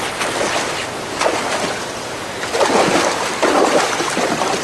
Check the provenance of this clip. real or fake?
real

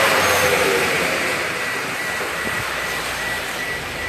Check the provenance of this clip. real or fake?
fake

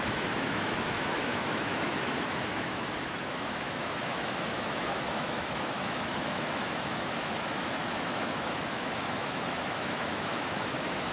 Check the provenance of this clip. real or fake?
fake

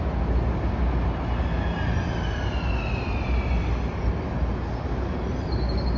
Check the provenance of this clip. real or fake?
real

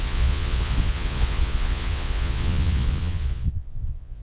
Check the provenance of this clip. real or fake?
fake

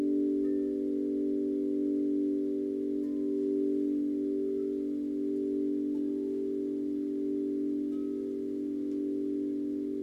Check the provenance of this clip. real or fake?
real